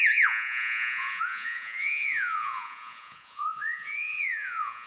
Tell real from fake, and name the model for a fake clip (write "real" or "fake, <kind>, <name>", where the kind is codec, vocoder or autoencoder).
fake, vocoder, Vocos